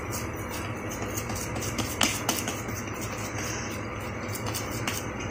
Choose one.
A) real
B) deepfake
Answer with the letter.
A